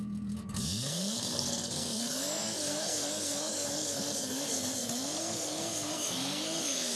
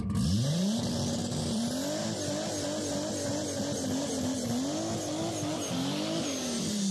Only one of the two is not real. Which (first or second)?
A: first